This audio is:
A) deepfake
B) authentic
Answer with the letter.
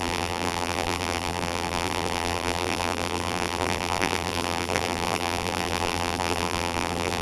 A